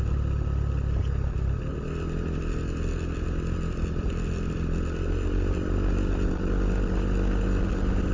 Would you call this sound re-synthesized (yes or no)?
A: no